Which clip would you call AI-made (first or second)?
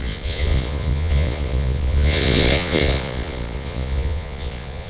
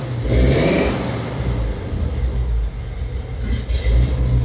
first